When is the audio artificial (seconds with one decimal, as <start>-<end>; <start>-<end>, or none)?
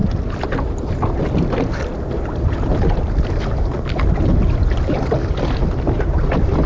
none